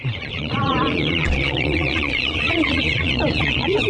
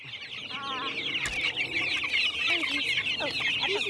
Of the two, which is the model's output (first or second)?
first